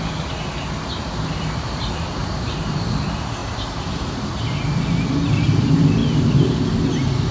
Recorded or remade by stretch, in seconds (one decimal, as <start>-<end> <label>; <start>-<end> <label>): 0.0-2.2 recorded; 2.2-3.0 remade; 3.0-6.0 recorded; 6.0-6.6 remade; 6.6-7.3 recorded